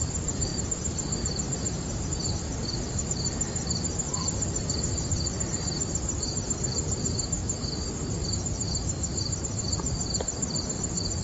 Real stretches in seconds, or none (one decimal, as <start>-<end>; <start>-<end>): 7.4-9.4